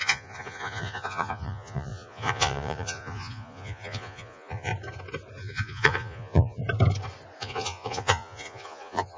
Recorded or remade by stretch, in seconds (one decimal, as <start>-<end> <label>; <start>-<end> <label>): 0.0-4.7 remade; 4.7-5.4 recorded; 5.4-6.6 remade; 6.6-7.4 recorded; 7.4-9.2 remade